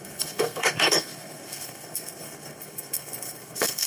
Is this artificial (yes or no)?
yes